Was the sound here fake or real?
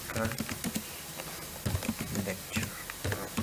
real